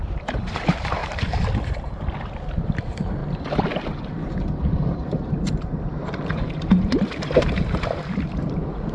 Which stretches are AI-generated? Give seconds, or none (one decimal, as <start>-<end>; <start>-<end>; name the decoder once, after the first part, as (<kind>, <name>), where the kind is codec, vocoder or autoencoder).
0.0-1.0 (vocoder, BigVGAN v2); 1.6-8.9